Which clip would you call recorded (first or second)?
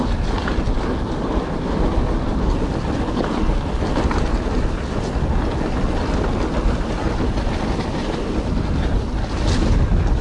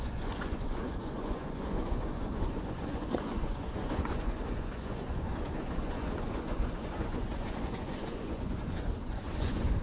first